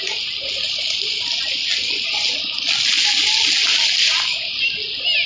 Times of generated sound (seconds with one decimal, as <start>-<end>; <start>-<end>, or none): none